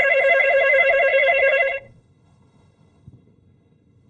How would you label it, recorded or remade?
remade